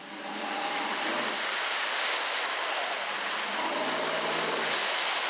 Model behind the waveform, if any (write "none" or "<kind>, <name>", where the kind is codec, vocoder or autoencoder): none